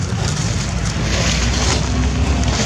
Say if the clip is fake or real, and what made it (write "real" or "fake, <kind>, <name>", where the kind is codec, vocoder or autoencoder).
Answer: real